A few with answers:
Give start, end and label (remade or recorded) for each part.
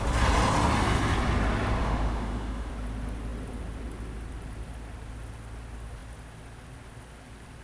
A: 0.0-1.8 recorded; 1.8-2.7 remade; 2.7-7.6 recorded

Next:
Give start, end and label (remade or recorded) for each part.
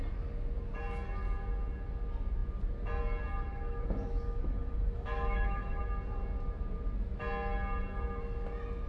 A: 0.0-3.5 recorded; 3.5-5.8 remade; 5.8-8.9 recorded